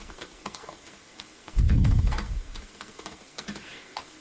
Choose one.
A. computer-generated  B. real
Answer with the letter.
A